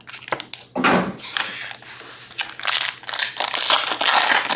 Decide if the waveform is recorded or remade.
recorded